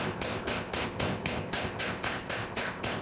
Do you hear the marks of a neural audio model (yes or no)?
yes